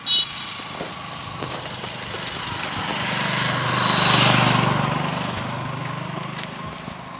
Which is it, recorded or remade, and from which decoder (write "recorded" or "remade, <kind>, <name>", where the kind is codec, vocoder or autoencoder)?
recorded